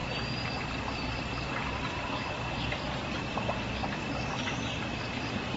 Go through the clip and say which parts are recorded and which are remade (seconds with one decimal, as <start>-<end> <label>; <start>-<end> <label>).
0.0-5.6 recorded